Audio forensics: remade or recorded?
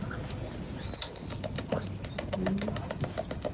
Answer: recorded